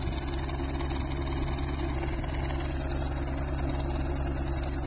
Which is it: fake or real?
real